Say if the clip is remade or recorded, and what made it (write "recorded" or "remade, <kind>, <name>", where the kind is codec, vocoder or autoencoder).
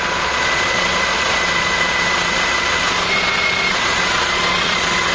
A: remade, vocoder, Vocos